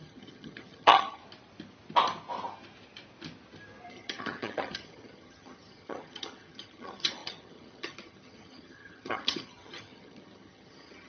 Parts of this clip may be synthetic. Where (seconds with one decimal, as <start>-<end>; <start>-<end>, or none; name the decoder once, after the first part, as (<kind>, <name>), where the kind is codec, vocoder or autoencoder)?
0.0-1.2 (vocoder, HiFi-GAN); 3.9-11.1